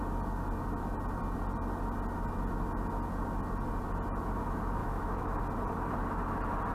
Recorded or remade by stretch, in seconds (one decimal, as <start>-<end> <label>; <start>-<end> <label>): 0.0-4.8 recorded; 4.8-5.4 remade; 5.4-6.7 recorded